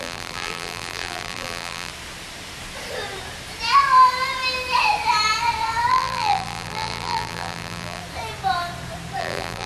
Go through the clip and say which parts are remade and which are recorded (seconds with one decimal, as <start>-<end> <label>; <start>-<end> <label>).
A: 0.0-1.9 remade; 1.9-5.9 recorded; 5.9-8.0 remade; 8.0-9.2 recorded; 9.2-9.7 remade